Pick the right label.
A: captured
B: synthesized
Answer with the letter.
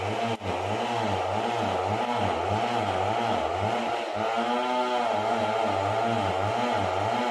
A